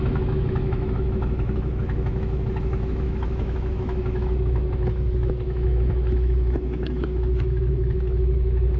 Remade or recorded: remade